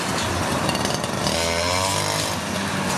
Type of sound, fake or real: real